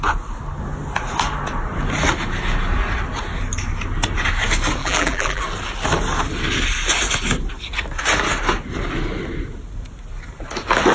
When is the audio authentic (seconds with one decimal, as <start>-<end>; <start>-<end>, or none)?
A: 0.0-4.8; 5.4-10.9